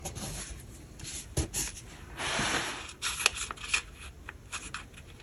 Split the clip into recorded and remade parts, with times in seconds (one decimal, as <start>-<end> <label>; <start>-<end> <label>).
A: 0.0-5.2 recorded